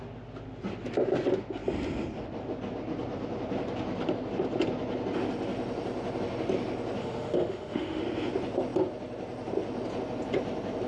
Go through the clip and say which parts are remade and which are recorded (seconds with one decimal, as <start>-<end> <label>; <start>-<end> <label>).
0.0-7.0 recorded; 7.0-8.0 remade; 8.0-10.9 recorded